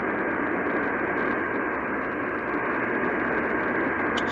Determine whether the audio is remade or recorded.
recorded